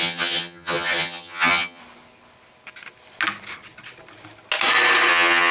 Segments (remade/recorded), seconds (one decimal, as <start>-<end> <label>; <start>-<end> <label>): 0.0-1.8 remade; 1.8-5.1 recorded; 5.1-5.5 remade